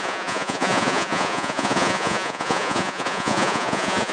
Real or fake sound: fake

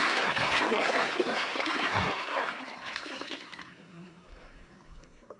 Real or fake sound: fake